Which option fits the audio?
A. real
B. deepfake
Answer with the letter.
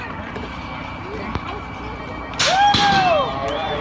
A